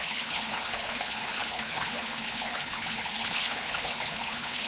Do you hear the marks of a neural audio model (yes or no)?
yes